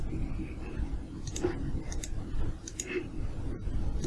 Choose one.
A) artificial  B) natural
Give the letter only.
B